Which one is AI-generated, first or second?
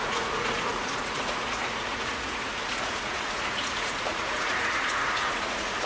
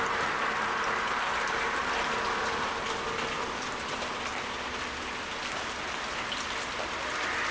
first